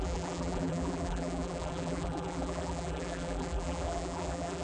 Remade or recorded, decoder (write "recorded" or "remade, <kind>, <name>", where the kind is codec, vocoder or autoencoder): remade, vocoder, BigVGAN v2